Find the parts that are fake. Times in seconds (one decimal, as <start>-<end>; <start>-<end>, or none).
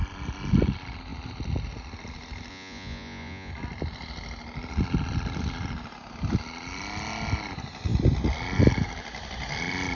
2.5-3.5